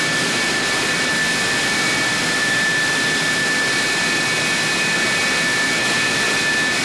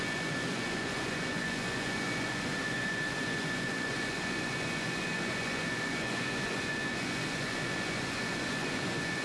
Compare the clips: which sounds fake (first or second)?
second